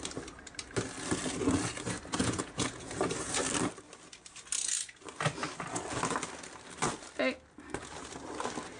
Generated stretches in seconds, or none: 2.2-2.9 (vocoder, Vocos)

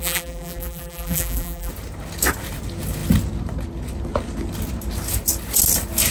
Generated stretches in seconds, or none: 0.0-1.7 (vocoder, BigVGAN v2)

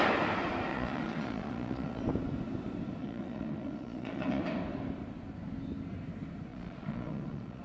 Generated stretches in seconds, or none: 0.7-2.0 (vocoder, Vocos); 3.0-4.4; 6.5-7.6